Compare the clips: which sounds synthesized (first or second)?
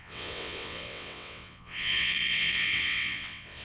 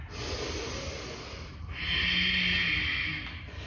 first